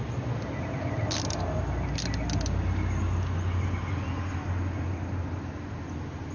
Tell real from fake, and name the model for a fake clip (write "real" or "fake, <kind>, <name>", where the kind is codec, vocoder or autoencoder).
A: real